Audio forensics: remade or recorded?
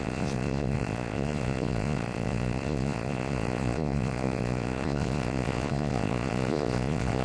remade